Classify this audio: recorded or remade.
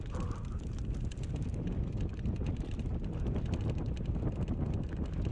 recorded